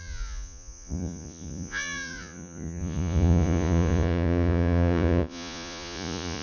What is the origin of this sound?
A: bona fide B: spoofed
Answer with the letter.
B